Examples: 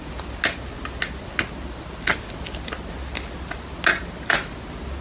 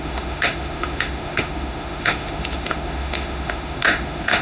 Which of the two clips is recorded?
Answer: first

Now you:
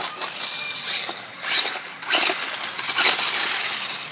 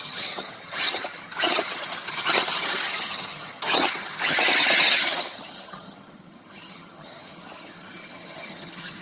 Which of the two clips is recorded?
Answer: first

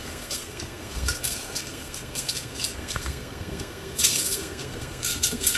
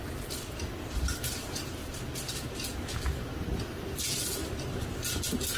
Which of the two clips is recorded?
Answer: second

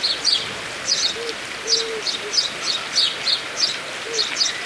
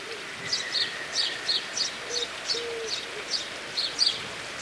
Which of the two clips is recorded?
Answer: first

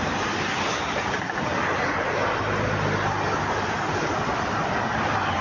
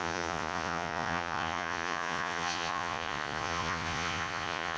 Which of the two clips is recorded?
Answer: first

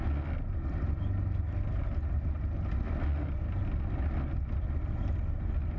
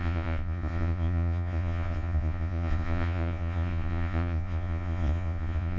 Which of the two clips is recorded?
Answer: first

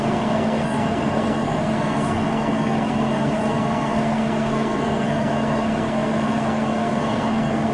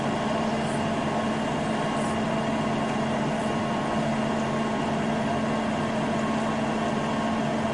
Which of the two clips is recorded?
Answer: second